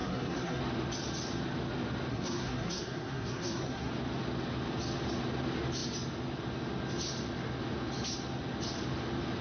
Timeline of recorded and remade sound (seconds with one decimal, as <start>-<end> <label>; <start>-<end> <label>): 0.0-0.6 remade; 0.6-2.1 recorded; 2.1-3.9 remade; 3.9-9.4 recorded